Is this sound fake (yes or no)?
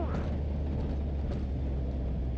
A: no